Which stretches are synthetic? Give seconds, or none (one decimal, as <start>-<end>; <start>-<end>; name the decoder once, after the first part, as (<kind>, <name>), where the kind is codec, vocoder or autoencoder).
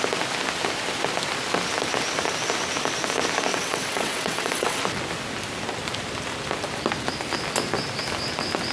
3.5-4.8 (vocoder, WaveNeXt)